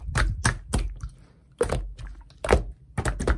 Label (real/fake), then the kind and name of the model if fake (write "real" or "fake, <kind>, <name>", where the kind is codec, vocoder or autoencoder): real